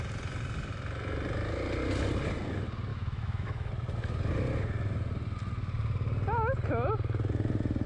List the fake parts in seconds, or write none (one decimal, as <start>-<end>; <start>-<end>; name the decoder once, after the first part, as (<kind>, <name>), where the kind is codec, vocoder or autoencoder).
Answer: 2.9-3.7 (autoencoder, DAC-VAE)